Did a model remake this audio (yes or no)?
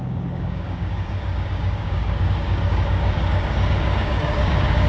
yes